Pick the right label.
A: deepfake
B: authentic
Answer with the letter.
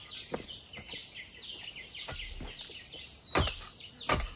B